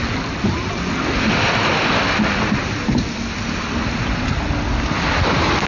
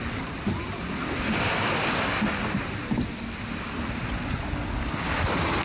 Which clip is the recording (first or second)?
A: first